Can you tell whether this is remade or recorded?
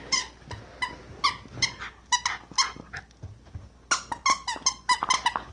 recorded